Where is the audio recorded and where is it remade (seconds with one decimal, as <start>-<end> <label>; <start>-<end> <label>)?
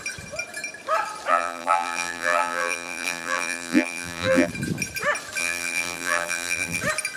0.0-1.3 recorded; 1.3-4.5 remade; 4.5-5.4 recorded; 5.4-6.8 remade; 6.8-7.2 recorded